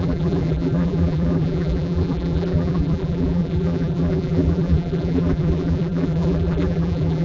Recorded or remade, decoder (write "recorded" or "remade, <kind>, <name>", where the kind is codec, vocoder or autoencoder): remade, vocoder, BigVGAN v2